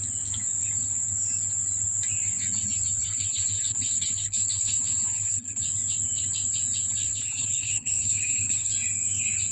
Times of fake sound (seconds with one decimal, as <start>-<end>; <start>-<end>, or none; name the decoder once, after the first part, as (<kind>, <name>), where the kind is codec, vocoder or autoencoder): 3.0-5.6 (codec, HILCodec); 7.0-8.7